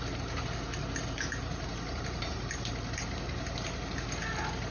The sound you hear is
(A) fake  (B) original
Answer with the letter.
B